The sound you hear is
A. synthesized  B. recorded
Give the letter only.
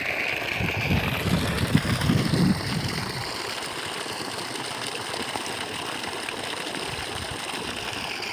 B